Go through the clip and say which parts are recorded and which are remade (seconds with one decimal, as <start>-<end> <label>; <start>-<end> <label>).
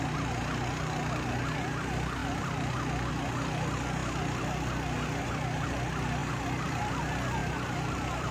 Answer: 0.0-2.2 recorded; 2.2-3.1 remade; 3.1-6.2 recorded; 6.2-7.0 remade; 7.0-7.4 recorded; 7.4-8.3 remade